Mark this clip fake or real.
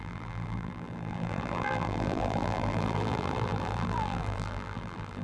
fake